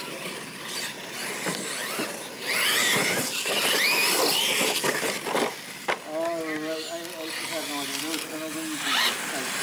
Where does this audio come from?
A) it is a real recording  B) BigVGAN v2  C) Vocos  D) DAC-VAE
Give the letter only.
A